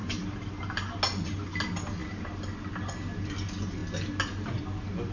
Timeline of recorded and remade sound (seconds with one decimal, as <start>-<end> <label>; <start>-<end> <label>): 0.0-5.1 recorded